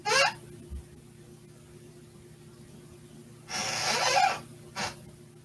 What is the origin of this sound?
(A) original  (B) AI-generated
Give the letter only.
A